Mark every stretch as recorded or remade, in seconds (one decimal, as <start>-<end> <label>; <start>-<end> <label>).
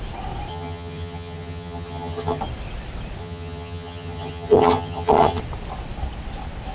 0.0-0.5 recorded; 0.5-2.4 remade; 2.4-3.2 recorded; 3.2-5.4 remade; 5.4-6.7 recorded